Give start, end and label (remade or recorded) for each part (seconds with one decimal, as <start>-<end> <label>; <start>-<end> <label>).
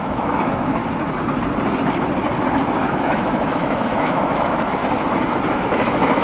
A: 0.0-0.8 remade; 0.8-2.8 recorded; 2.8-4.8 remade; 4.8-5.5 recorded; 5.5-6.2 remade